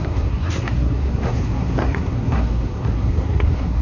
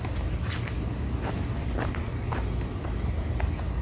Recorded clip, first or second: second